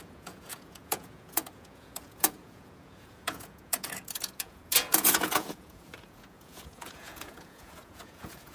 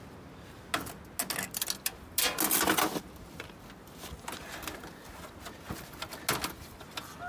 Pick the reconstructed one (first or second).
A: first